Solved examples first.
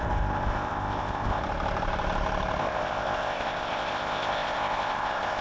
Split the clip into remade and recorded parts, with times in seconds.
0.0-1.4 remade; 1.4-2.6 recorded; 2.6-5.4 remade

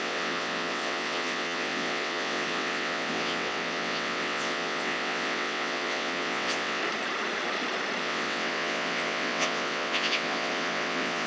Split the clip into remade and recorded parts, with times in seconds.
0.0-6.8 remade; 6.8-8.0 recorded; 8.0-11.3 remade